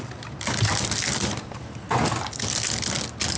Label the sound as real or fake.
real